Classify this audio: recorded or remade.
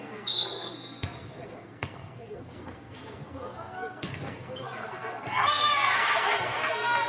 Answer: remade